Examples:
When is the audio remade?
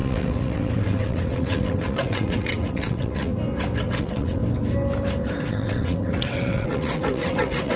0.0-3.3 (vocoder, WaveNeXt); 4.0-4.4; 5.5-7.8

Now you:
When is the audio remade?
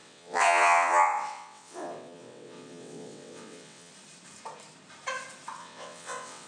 0.0-3.9 (vocoder, WaveNeXt); 5.6-6.5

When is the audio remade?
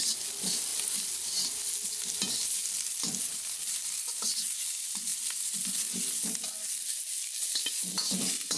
none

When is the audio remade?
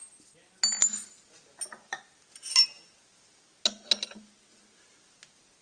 none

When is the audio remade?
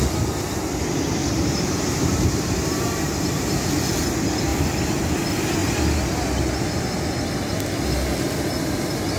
1.2-3.7 (vocoder, BigVGAN v2)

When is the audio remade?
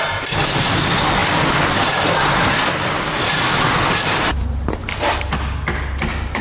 none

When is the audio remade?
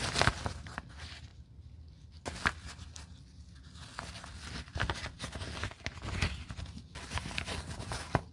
none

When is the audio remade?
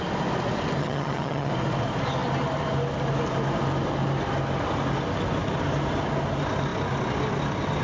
0.8-1.5 (vocoder, HiFi-GAN)